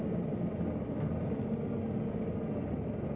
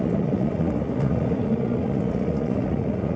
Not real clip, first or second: second